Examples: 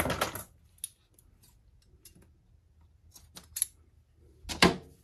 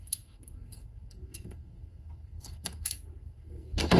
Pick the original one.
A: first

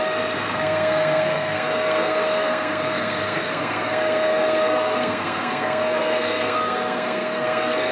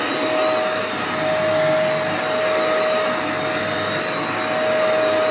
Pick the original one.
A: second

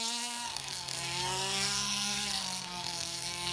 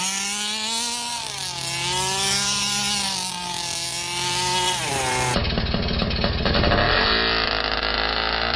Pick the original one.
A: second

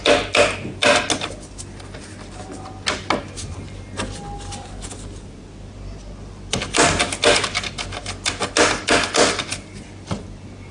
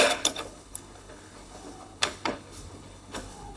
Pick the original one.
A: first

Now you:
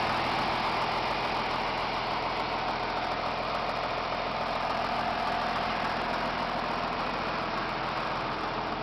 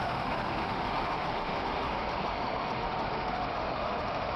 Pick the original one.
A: first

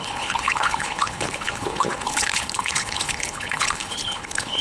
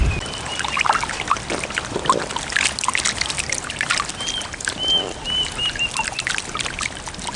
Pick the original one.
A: second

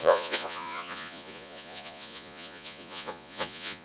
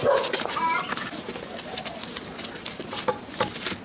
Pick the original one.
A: second